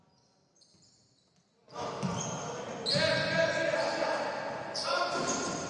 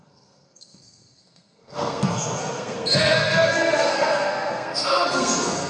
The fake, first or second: second